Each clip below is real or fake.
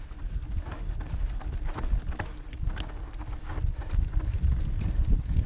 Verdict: real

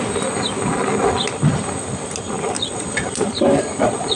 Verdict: real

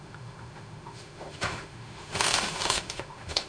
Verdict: fake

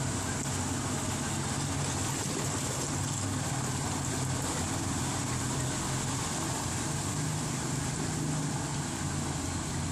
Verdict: real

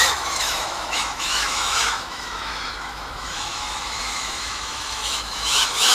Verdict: fake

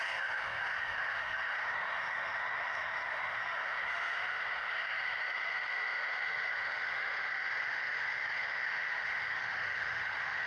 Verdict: fake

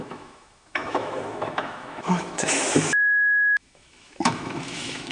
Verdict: fake